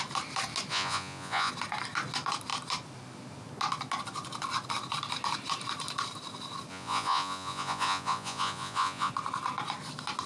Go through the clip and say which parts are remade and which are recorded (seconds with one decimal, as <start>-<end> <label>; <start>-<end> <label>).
0.0-0.7 recorded; 0.7-1.5 remade; 1.5-6.7 recorded; 6.7-9.1 remade; 9.1-10.3 recorded